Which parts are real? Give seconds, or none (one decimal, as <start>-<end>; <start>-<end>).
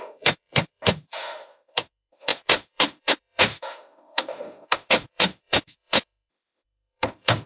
none